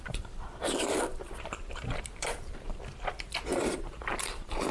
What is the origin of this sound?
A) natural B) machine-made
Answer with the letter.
B